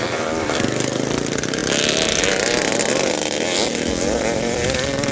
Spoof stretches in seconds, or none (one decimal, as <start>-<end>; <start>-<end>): 0.0-1.6